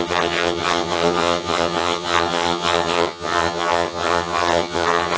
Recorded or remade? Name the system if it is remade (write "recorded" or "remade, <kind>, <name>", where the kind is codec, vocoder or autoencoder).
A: remade, vocoder, HiFi-GAN